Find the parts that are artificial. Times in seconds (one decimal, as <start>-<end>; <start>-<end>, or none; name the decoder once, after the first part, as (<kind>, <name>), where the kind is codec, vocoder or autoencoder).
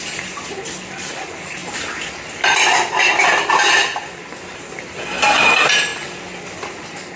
none